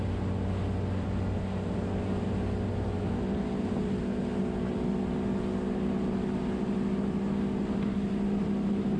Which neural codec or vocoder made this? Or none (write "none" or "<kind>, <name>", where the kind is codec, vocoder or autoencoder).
none